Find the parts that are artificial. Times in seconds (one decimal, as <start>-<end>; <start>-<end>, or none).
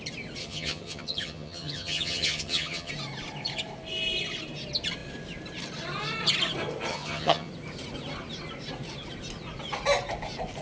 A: 0.4-2.9; 6.9-7.5